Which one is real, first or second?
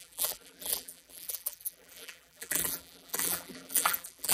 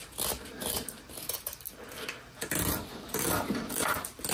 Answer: second